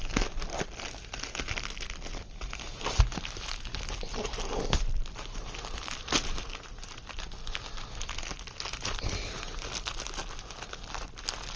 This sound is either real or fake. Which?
real